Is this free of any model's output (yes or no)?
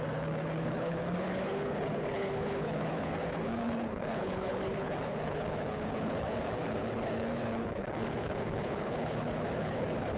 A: no